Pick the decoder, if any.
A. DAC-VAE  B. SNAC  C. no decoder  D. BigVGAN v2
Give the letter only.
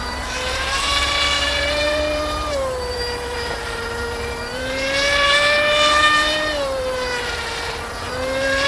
D